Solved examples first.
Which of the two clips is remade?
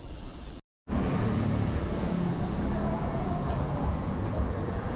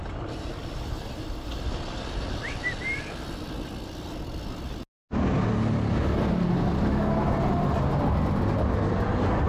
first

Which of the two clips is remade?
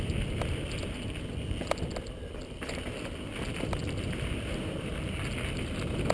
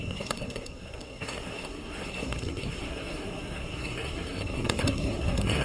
second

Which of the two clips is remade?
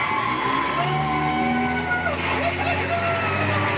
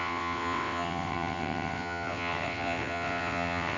second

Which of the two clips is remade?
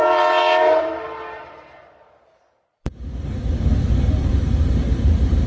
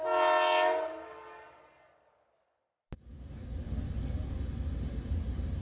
first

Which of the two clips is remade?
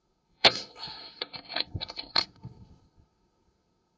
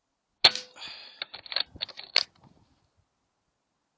first